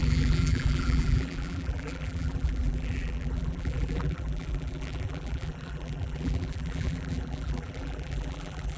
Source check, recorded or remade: remade